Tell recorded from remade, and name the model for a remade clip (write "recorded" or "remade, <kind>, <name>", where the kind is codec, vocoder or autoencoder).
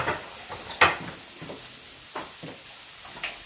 recorded